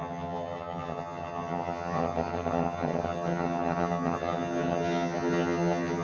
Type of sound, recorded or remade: remade